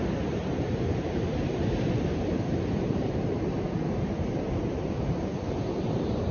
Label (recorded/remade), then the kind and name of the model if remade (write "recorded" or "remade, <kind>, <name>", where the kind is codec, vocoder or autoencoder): remade, vocoder, BigVGAN v2